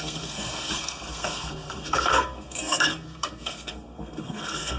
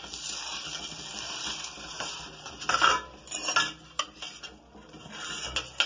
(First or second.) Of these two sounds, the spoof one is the first